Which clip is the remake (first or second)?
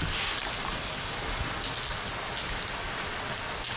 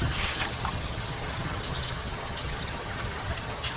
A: second